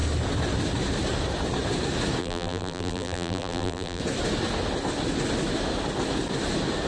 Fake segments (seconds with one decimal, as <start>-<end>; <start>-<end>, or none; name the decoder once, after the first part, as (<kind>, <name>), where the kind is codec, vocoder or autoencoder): 2.2-4.0 (vocoder, BigVGAN v2)